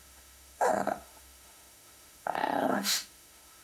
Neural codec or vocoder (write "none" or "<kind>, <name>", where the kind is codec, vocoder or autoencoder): autoencoder, DAC-VAE